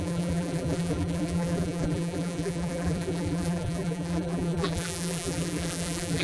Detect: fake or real fake